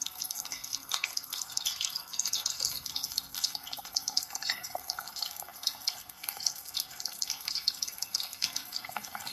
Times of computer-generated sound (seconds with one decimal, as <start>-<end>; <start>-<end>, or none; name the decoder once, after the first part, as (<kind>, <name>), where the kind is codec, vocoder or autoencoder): 0.0-9.3 (codec, SNAC)